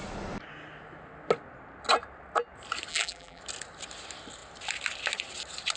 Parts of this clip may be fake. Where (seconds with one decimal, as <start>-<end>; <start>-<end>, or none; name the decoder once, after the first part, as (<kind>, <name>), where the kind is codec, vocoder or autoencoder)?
2.9-3.4 (vocoder, BigVGAN v2)

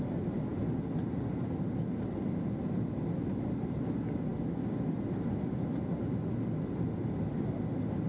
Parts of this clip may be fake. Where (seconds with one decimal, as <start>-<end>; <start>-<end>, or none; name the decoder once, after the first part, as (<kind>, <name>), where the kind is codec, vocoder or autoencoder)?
none

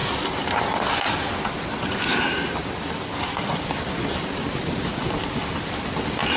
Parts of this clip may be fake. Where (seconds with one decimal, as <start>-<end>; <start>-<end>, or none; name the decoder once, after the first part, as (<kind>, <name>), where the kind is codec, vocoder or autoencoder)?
0.0-0.6 (vocoder, BigVGAN v2); 1.8-5.0

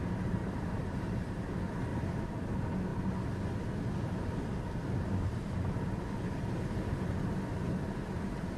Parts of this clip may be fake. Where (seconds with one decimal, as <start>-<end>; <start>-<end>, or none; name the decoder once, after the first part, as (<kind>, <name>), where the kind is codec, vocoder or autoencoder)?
0.4-1.4 (vocoder, BigVGAN v2)